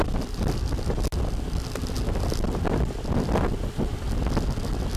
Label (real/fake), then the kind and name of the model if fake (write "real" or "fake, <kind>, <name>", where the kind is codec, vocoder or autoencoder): real